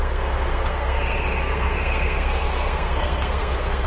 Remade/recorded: remade